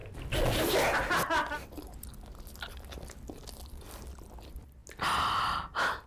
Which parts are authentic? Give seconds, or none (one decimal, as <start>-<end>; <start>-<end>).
0.0-6.1